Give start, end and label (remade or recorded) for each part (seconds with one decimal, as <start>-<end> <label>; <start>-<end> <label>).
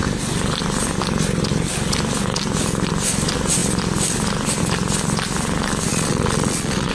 0.0-5.9 recorded; 5.9-6.9 remade